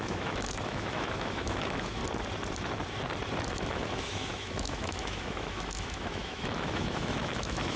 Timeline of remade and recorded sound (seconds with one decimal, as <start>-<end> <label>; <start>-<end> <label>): 0.0-2.0 remade; 2.0-3.5 recorded; 3.5-7.8 remade